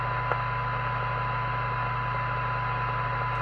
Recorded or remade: recorded